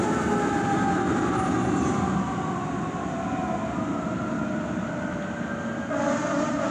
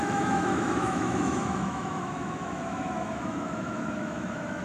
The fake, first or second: second